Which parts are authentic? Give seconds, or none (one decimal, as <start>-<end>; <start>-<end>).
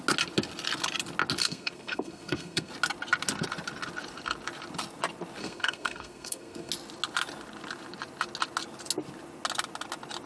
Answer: 0.0-1.4; 2.7-5.4; 6.7-10.3